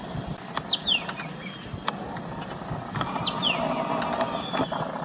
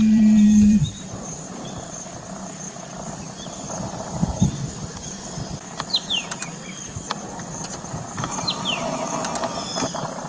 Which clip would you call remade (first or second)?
second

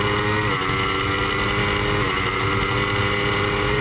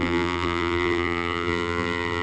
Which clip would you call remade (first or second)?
second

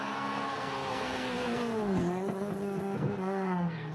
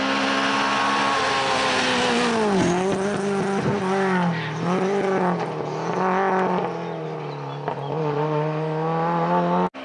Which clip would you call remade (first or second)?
first